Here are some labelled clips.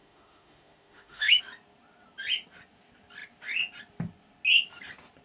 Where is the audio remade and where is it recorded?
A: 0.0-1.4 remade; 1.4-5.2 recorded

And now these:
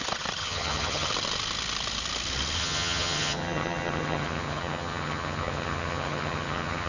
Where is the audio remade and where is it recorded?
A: 0.0-0.4 recorded; 0.4-1.1 remade; 1.1-2.6 recorded; 2.6-6.9 remade

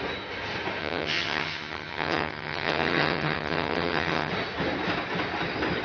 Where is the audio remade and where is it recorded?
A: 0.0-0.8 recorded; 0.8-4.3 remade; 4.3-5.8 recorded

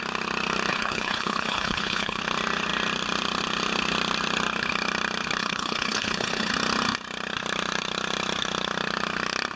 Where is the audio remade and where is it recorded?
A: 0.0-0.7 recorded; 0.7-2.2 remade; 2.2-5.4 recorded; 5.4-6.5 remade; 6.5-9.6 recorded

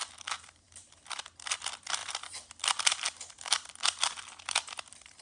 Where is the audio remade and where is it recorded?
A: 0.0-5.2 recorded

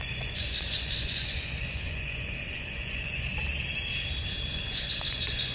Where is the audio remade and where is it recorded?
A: 0.0-3.3 remade; 3.3-4.5 recorded; 4.5-5.5 remade

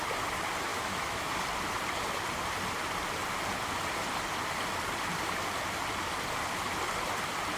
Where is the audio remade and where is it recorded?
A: 0.0-0.7 recorded; 0.7-1.3 remade; 1.3-7.6 recorded